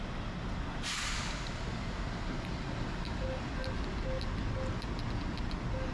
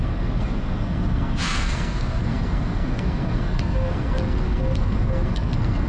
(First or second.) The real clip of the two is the first